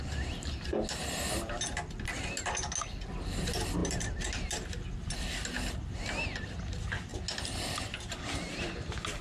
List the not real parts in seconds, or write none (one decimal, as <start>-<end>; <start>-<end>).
none